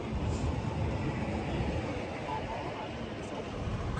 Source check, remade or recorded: recorded